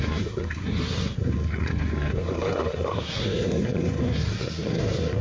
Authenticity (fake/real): fake